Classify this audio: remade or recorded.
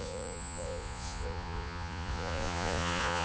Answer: remade